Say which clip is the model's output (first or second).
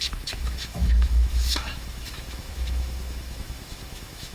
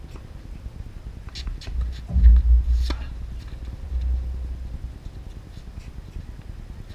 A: first